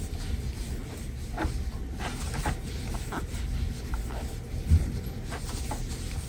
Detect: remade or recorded recorded